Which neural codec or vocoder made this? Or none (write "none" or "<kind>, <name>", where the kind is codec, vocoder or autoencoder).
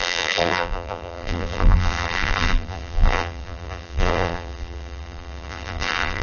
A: vocoder, BigVGAN v2